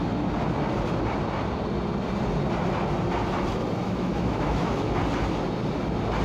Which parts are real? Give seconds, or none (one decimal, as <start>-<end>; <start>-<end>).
0.0-3.8; 5.0-6.2